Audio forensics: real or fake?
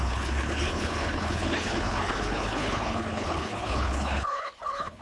fake